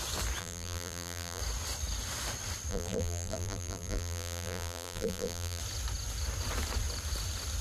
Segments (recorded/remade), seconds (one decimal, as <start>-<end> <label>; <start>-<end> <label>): 0.0-0.4 recorded; 0.4-1.4 remade; 1.4-2.7 recorded; 2.7-5.6 remade; 5.6-7.6 recorded